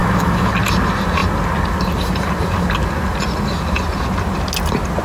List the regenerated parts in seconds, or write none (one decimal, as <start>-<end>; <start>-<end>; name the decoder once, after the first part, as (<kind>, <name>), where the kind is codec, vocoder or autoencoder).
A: 0.0-0.5 (autoencoder, DAC-VAE)